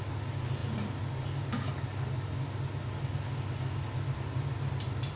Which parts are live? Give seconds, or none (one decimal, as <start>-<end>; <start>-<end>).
0.0-5.2